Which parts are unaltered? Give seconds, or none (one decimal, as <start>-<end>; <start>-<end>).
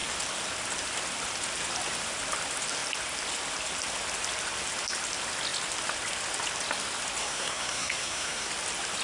0.0-7.2; 8.5-9.0